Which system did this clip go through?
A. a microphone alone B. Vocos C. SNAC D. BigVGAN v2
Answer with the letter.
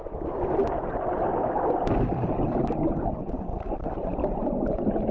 A